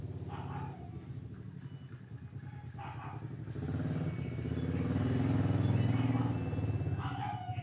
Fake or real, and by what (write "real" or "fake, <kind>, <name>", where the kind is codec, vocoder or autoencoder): real